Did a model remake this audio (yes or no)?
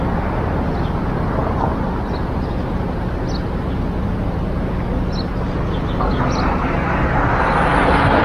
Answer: no